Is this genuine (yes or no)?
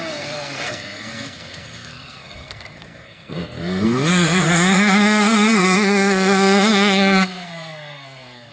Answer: no